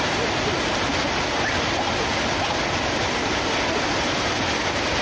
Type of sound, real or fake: real